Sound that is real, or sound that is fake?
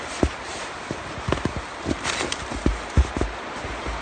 real